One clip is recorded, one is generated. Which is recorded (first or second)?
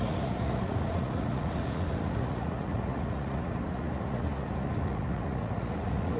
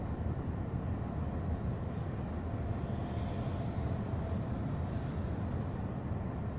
second